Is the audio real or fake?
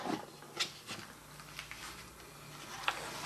real